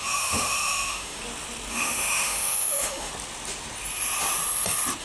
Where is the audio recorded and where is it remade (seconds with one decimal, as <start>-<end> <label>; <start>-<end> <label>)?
0.0-1.2 remade; 1.2-1.7 recorded; 1.7-3.1 remade; 3.1-5.0 recorded